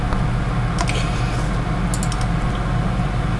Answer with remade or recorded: recorded